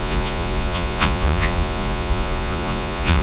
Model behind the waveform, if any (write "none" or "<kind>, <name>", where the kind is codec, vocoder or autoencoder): vocoder, Vocos